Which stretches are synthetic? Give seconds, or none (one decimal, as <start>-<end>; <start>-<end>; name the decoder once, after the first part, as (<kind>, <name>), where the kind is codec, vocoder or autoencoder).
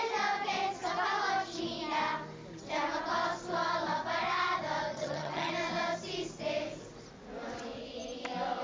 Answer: 4.9-5.5 (vocoder, HiFi-GAN)